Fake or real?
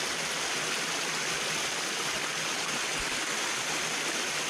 real